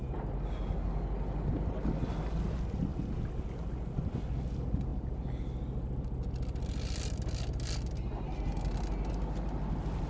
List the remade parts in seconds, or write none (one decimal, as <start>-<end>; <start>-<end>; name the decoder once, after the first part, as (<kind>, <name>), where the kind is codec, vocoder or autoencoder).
none